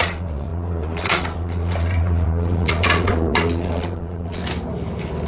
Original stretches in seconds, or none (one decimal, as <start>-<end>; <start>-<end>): 4.4-5.3